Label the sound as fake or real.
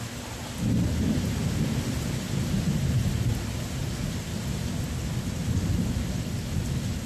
real